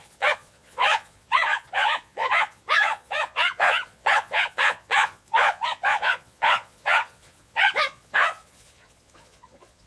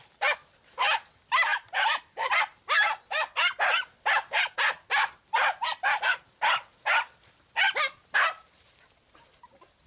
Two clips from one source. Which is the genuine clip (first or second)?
second